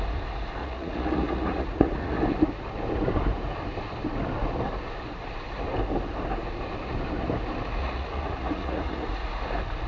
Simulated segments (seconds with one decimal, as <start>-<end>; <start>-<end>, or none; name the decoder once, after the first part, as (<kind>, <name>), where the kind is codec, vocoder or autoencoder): 0.6-2.2 (vocoder, Vocos); 7.8-9.4